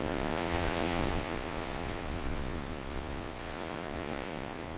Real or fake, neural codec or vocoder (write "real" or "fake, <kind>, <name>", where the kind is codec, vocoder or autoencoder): fake, vocoder, Vocos